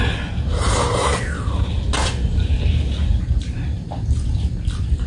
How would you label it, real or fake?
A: real